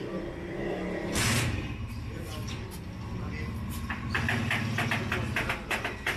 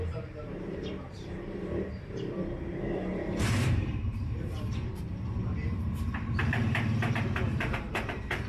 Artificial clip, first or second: second